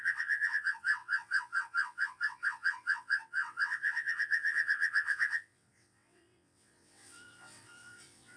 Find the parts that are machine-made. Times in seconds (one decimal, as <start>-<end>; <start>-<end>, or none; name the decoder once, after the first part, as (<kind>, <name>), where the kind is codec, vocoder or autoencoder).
0.0-8.4 (vocoder, WaveNeXt)